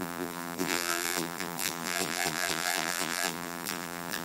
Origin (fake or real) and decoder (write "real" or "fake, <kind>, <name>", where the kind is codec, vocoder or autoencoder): fake, vocoder, BigVGAN v2